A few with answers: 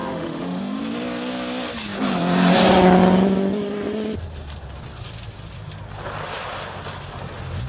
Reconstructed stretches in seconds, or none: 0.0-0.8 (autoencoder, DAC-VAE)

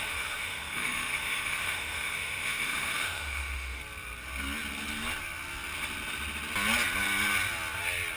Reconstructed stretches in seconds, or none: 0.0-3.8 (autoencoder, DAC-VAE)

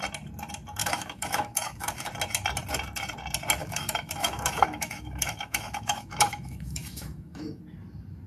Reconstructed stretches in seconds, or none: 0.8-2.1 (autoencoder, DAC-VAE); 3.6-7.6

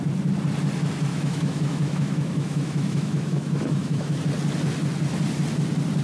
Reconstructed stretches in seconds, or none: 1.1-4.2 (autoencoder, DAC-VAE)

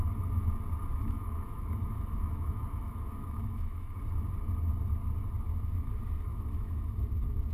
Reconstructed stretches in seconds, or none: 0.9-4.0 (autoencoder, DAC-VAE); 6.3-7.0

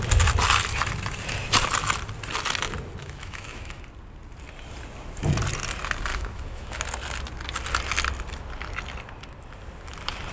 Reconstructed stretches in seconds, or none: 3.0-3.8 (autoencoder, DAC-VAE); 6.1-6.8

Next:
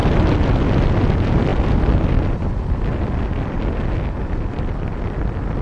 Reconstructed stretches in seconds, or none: none